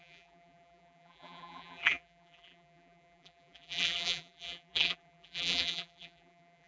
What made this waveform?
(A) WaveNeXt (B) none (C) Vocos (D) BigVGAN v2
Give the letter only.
D